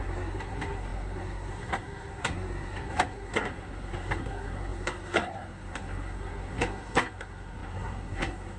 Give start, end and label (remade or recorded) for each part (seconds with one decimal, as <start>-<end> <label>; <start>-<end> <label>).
0.0-8.6 remade